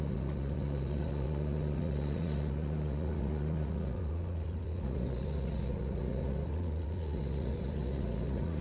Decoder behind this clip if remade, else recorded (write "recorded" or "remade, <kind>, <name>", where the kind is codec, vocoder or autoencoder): remade, vocoder, Vocos